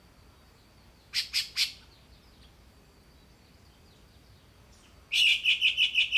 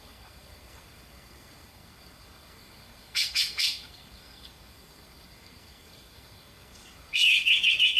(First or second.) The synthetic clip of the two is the second